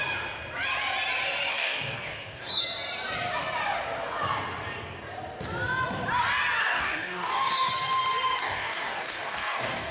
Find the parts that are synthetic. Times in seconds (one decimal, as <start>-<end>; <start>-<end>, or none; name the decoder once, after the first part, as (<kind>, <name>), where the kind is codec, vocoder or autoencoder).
1.5-2.6 (codec, DAC); 6.6-7.7; 8.4-9.9